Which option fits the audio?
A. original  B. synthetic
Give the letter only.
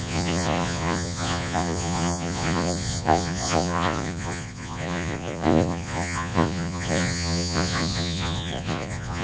B